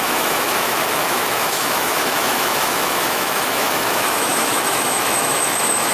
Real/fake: fake